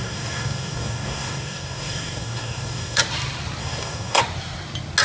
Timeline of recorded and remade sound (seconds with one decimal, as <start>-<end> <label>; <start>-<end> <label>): 0.0-3.0 remade; 3.0-3.6 recorded; 3.6-4.2 remade; 4.2-5.0 recorded